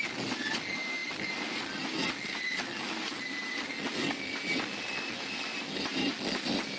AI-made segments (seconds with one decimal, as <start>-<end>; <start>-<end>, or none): none